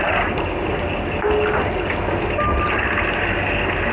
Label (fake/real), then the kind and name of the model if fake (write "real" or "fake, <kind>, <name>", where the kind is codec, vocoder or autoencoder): real